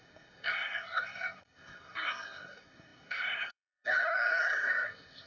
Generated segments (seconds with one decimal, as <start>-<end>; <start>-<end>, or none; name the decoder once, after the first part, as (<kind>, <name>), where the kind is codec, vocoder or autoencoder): 0.0-5.3 (codec, SNAC)